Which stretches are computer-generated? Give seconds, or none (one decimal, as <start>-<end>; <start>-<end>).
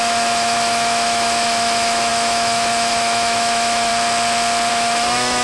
0.0-3.9; 4.7-5.4